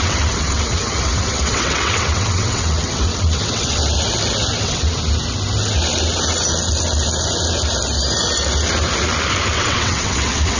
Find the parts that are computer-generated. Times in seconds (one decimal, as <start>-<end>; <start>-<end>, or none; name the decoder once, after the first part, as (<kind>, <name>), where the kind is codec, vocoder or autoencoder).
0.0-3.8 (vocoder, WaveNeXt); 4.6-5.0; 9.5-10.6